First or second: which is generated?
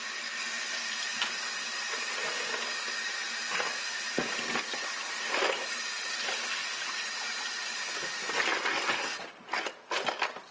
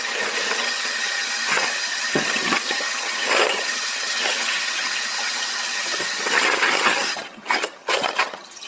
second